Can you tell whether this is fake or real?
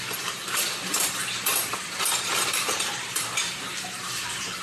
fake